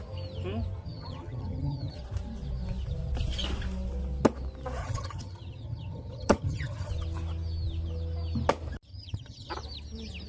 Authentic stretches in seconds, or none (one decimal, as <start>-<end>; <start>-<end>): 0.0-0.8; 2.0-4.8; 6.9-8.9; 9.5-10.3